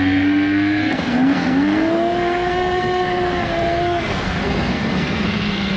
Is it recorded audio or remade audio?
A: remade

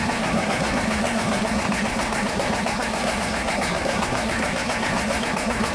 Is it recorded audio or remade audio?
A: remade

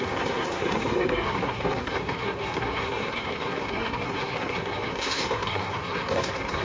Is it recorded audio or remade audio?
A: remade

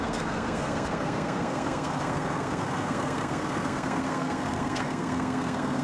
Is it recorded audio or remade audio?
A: remade